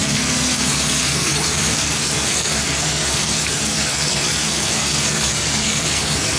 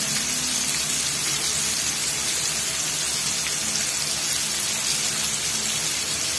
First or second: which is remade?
first